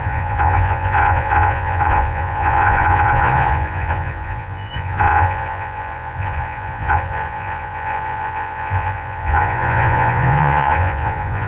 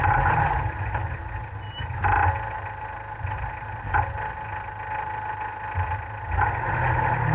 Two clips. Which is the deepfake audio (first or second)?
first